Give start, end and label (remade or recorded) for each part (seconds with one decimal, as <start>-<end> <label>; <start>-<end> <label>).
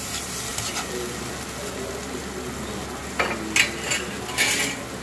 0.0-5.0 recorded